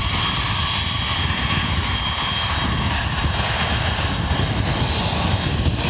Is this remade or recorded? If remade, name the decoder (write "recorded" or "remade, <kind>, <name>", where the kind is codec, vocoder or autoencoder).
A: recorded